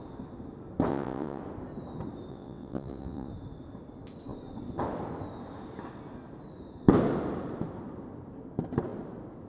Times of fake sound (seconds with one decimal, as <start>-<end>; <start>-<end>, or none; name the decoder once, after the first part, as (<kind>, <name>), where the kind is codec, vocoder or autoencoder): 0.9-1.4 (vocoder, WaveNeXt); 2.3-3.3